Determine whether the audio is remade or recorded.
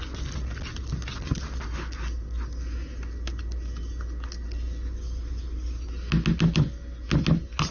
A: recorded